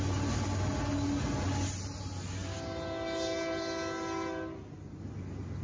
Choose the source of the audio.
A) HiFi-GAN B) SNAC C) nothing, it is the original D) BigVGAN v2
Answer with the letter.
C